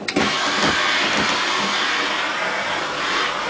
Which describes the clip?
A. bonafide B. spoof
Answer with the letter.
A